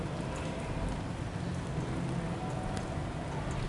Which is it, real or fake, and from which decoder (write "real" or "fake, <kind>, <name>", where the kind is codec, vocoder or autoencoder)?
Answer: real